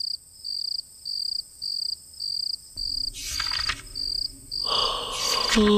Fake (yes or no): no